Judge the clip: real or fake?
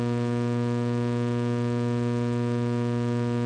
real